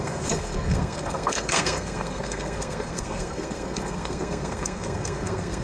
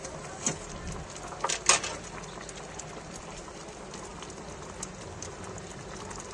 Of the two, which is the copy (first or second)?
first